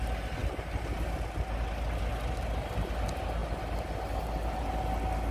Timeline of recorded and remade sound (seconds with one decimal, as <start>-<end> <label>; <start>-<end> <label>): 0.0-5.3 recorded